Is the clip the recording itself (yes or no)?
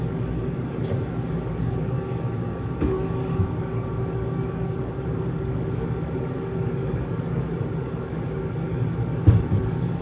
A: no